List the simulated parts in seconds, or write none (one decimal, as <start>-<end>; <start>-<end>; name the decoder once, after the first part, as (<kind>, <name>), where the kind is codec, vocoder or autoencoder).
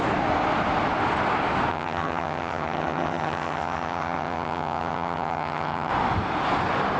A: 1.7-5.9 (vocoder, HiFi-GAN)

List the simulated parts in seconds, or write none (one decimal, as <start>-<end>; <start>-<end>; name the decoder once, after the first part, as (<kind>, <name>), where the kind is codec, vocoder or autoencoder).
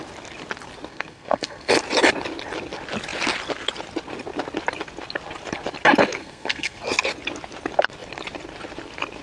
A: 0.9-1.7 (codec, SNAC); 6.2-6.8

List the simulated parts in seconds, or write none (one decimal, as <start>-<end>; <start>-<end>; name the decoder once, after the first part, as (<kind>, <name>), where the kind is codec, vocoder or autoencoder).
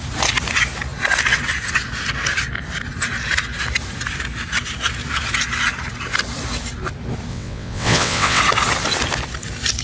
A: 7.3-8.4 (vocoder, WaveNeXt)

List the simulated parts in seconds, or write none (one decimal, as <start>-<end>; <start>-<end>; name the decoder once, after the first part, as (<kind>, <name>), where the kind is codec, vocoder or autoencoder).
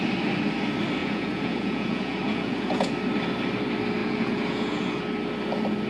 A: 1.0-2.9 (vocoder, Vocos); 4.0-5.0